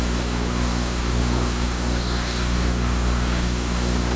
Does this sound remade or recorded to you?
remade